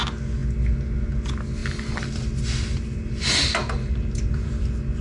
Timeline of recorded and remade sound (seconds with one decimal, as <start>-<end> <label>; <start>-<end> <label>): 0.0-3.6 recorded; 3.6-4.5 remade; 4.5-5.0 recorded